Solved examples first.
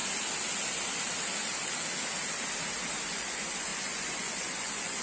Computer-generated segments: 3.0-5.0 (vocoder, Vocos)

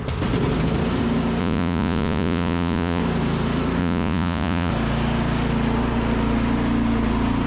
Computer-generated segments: 1.4-3.0 (vocoder, Vocos); 3.8-4.7

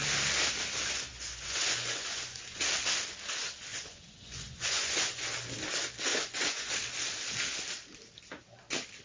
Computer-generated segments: 1.1-2.6 (vocoder, Vocos); 3.7-5.3; 6.1-6.7